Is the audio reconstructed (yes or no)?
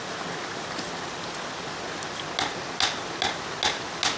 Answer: no